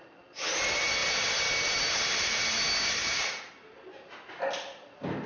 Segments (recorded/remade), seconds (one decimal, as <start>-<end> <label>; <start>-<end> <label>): 0.0-3.0 recorded; 3.0-3.5 remade; 3.5-5.3 recorded